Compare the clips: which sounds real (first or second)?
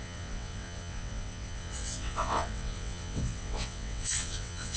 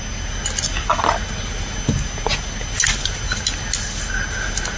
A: second